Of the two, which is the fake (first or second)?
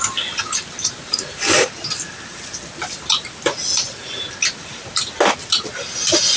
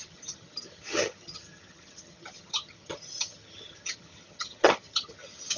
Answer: second